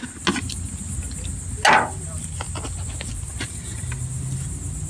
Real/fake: real